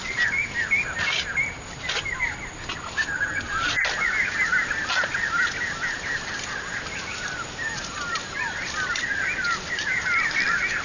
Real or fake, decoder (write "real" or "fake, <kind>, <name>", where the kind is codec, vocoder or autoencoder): real